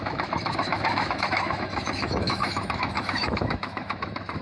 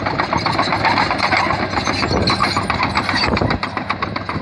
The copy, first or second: first